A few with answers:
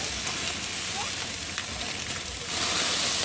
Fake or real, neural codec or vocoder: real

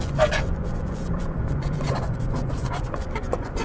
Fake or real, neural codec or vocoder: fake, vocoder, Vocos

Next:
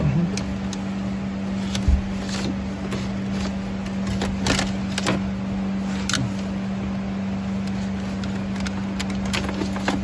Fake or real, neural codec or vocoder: real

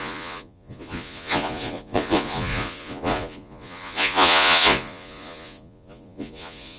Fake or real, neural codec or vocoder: fake, vocoder, Vocos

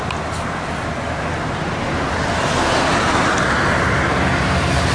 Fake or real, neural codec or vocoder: real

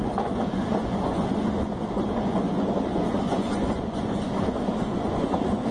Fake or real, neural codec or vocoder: fake, vocoder, Vocos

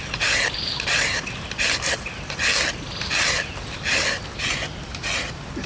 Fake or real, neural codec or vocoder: real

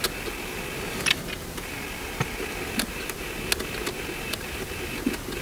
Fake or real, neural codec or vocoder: real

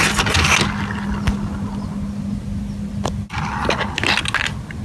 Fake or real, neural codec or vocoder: real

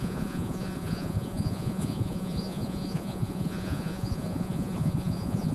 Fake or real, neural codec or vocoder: fake, vocoder, Vocos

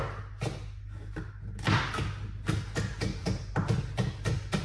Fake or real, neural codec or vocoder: real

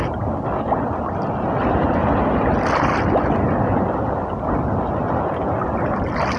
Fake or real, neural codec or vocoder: real